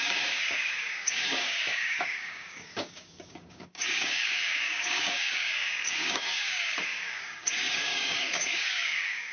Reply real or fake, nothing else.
fake